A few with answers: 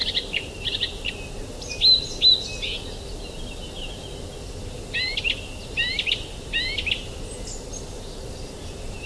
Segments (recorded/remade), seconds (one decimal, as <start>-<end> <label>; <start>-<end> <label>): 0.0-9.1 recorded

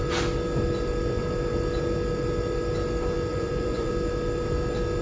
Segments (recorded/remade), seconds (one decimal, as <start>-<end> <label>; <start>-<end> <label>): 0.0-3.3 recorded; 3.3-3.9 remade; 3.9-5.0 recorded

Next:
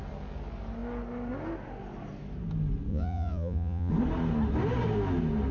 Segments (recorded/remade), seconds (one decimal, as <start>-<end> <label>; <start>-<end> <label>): 0.0-2.9 recorded; 2.9-3.9 remade; 3.9-5.5 recorded

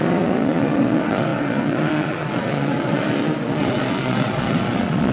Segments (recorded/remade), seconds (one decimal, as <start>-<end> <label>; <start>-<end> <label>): 0.0-5.1 remade

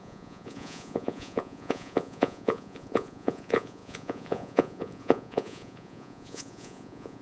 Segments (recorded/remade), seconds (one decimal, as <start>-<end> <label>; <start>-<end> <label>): 0.0-7.2 remade